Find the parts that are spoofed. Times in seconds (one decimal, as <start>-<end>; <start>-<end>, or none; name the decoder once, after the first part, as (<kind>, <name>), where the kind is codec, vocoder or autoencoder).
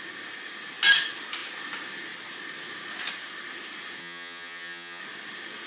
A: 4.0-5.0 (vocoder, HiFi-GAN)